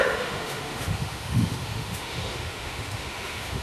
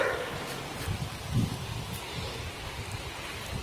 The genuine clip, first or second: second